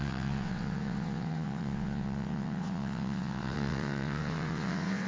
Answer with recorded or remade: remade